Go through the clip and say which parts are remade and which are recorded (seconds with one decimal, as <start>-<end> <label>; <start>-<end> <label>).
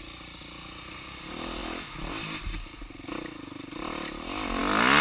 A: 0.0-5.0 recorded